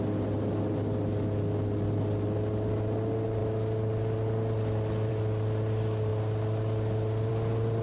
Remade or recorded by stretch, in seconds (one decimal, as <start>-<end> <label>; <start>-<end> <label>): 0.0-7.8 recorded